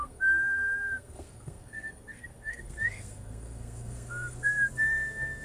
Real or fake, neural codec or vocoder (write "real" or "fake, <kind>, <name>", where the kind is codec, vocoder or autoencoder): fake, codec, SNAC